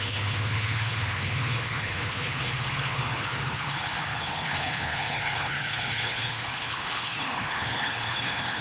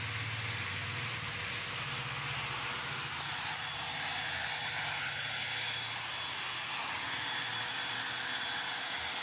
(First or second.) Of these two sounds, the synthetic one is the first